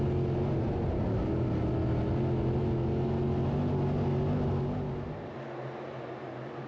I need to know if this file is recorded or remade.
recorded